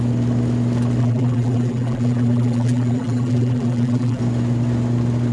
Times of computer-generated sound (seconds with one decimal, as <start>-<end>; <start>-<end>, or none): 1.0-4.2